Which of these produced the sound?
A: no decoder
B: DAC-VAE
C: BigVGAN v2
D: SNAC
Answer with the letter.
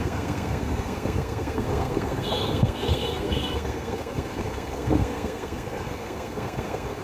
D